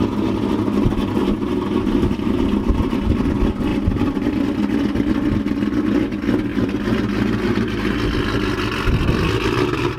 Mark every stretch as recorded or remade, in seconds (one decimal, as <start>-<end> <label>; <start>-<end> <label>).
0.0-1.2 recorded; 1.2-3.2 remade; 3.2-3.7 recorded; 3.7-4.4 remade; 4.4-6.5 recorded; 6.5-8.0 remade; 8.0-10.0 recorded